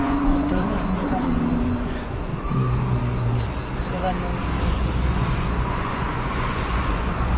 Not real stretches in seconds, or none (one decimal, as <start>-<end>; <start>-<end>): 0.0-2.3; 4.6-7.4